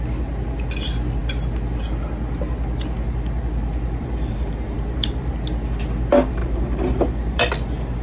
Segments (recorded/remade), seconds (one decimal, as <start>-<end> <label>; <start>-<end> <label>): 0.0-4.0 recorded; 4.0-5.3 remade; 5.3-6.4 recorded; 6.4-7.5 remade; 7.5-8.0 recorded